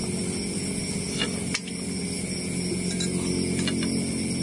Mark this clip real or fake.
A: real